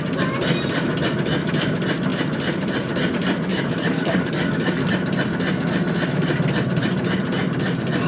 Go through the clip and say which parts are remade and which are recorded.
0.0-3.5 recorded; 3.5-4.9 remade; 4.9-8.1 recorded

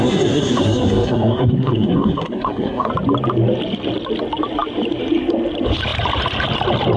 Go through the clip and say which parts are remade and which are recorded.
0.0-2.9 remade; 2.9-7.0 recorded

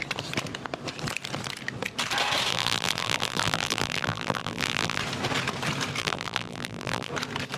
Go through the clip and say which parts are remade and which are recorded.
0.0-2.5 recorded; 2.5-5.0 remade; 5.0-6.0 recorded; 6.0-7.1 remade; 7.1-7.6 recorded

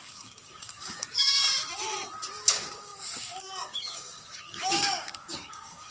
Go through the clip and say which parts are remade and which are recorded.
0.0-1.4 remade; 1.4-2.4 recorded; 2.4-5.9 remade

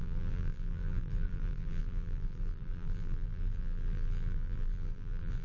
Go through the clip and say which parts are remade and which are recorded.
0.0-5.4 remade